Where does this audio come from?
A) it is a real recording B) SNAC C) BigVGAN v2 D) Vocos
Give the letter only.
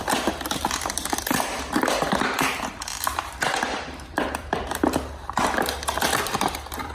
C